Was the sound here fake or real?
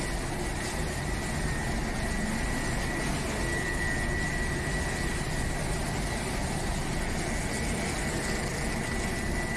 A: real